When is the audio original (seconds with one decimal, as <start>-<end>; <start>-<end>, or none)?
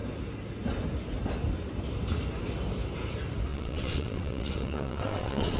0.0-3.5